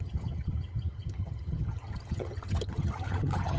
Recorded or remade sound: remade